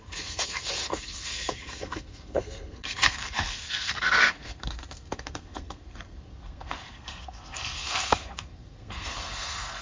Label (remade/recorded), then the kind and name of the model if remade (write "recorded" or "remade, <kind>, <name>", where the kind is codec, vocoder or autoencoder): remade, codec, SNAC